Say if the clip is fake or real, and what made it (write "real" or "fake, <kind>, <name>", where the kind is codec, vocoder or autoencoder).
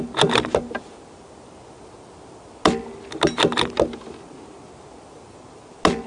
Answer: real